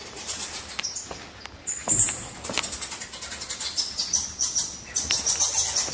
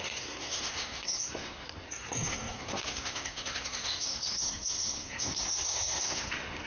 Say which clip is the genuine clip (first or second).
first